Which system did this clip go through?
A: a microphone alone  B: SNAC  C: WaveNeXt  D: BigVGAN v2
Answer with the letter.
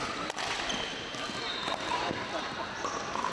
A